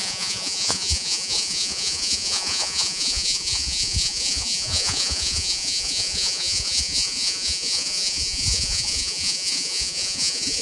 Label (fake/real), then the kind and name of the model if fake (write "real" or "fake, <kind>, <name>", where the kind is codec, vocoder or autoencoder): fake, vocoder, Vocos